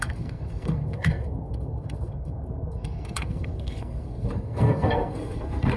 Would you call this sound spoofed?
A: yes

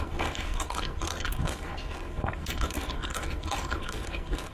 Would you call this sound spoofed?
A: yes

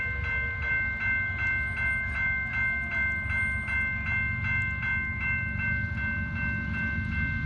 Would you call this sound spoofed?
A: no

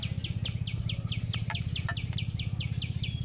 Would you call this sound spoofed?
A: no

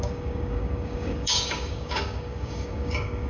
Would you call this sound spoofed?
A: yes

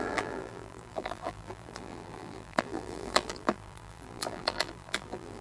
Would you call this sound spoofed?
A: yes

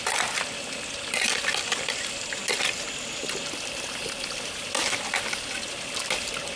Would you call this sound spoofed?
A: no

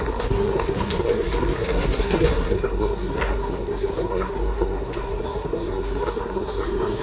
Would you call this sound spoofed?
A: yes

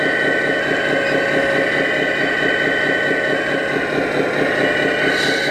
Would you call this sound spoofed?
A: no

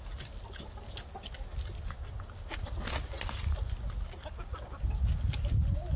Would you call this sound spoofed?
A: no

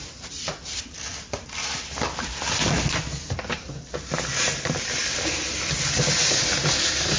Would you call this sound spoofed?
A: no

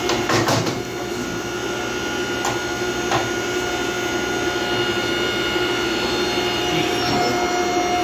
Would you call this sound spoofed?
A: no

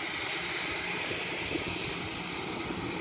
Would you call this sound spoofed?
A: no